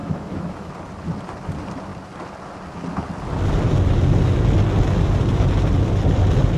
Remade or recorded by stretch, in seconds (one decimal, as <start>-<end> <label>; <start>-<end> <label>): 0.0-0.7 remade; 0.7-6.6 recorded